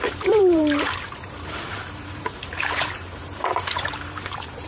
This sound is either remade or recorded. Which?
remade